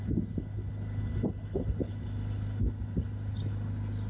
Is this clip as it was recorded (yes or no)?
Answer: yes